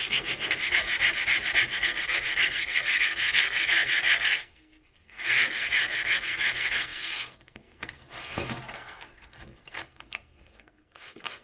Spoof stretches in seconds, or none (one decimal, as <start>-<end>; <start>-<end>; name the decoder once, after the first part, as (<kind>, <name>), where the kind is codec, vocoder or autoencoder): 0.0-0.9 (codec, SNAC); 1.7-11.4